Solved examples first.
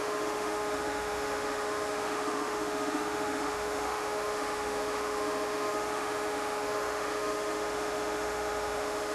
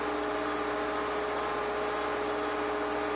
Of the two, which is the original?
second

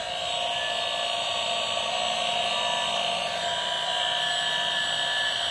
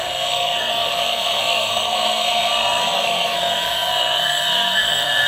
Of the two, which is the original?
first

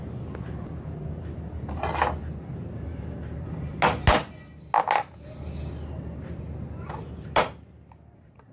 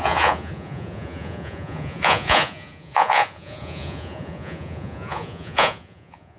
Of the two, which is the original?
first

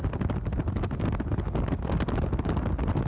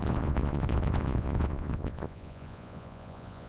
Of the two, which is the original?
first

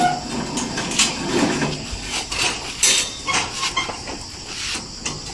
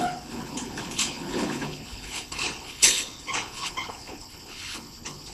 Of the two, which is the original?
first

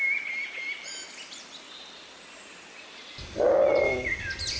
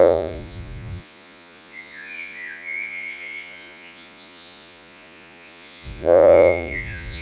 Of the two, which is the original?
first